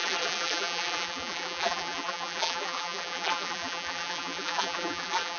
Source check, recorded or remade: remade